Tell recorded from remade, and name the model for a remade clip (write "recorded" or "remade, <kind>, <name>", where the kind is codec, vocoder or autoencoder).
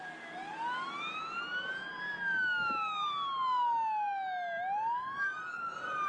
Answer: recorded